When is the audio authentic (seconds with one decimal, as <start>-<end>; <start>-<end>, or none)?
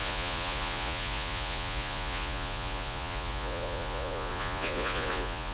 none